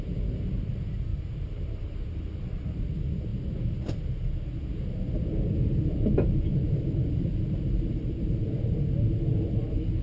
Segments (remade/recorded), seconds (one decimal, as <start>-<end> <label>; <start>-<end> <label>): 0.0-1.1 recorded; 1.1-2.8 remade; 2.8-6.5 recorded; 6.5-8.8 remade; 8.8-10.0 recorded